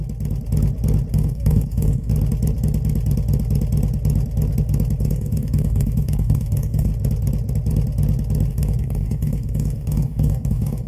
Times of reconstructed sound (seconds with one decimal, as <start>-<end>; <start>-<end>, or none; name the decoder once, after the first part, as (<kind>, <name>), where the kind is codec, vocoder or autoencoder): 1.1-2.1 (codec, DAC); 5.0-6.9; 8.5-10.9